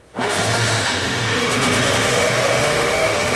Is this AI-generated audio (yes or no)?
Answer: yes